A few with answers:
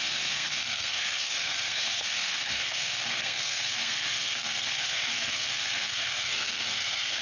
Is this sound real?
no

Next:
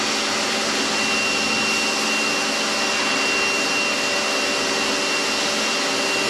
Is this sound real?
yes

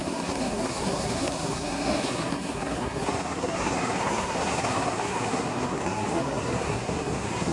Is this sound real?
no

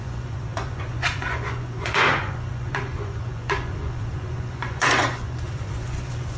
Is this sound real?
no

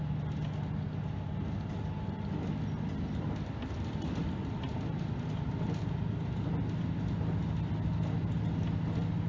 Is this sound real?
yes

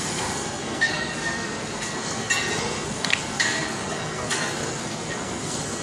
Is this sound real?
no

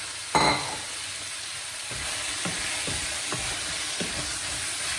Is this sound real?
yes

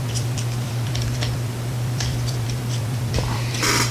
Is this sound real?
no